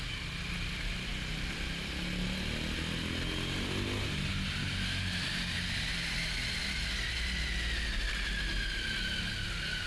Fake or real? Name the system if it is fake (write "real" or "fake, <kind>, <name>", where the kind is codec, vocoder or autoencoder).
real